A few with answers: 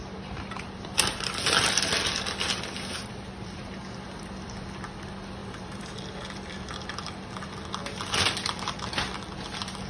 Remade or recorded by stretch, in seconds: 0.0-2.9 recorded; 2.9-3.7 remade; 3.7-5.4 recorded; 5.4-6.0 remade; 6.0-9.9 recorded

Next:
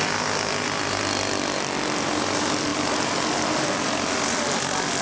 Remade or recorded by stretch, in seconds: 0.0-5.0 recorded

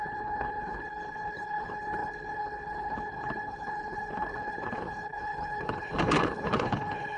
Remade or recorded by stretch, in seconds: 0.0-7.2 remade